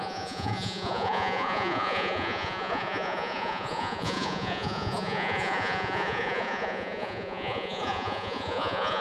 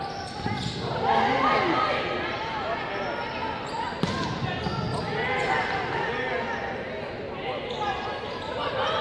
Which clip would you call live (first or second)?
second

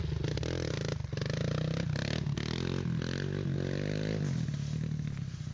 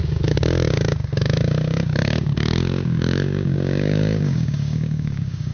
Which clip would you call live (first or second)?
first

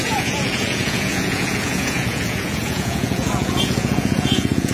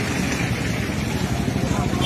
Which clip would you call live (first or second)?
second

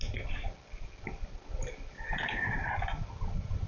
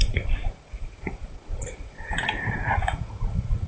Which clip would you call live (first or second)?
first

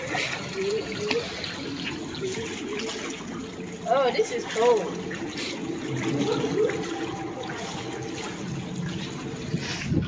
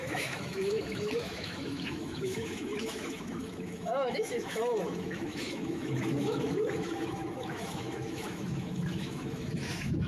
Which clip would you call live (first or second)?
first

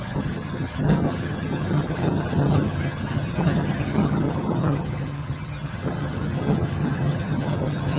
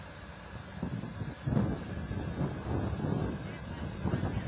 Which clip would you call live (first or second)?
second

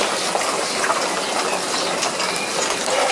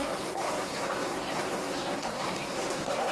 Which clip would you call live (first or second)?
first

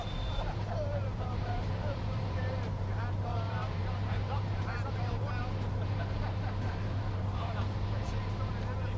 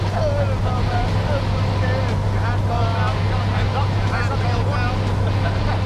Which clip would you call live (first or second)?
second